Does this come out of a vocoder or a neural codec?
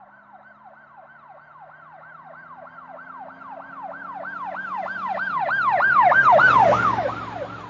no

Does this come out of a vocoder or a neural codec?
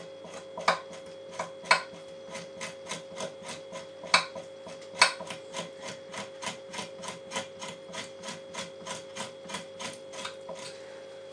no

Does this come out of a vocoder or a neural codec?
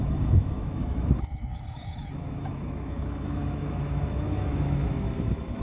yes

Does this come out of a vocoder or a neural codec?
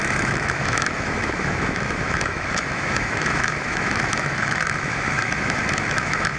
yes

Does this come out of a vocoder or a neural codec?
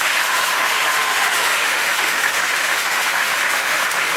yes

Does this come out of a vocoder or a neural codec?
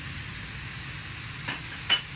no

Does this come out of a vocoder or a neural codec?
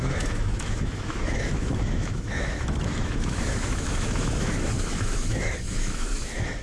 yes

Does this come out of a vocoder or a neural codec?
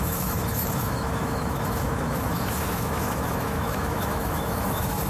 yes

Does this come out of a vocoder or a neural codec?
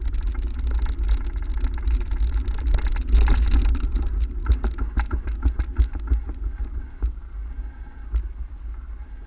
no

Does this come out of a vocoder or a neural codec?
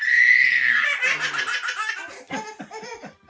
no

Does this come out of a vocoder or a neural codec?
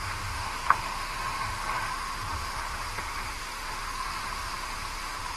yes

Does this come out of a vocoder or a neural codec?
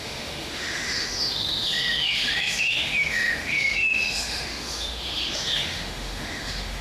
yes